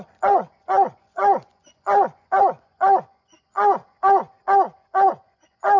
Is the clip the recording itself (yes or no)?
no